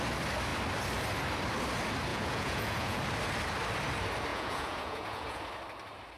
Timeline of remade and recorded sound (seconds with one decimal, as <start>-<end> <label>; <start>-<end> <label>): 0.0-2.1 recorded; 2.1-3.0 remade; 3.0-4.3 recorded; 4.3-5.4 remade; 5.4-6.2 recorded